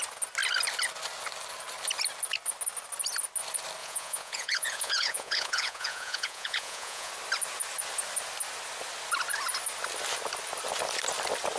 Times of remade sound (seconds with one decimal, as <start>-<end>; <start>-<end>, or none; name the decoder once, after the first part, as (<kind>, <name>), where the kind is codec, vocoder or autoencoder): 3.8-7.1 (vocoder, Vocos)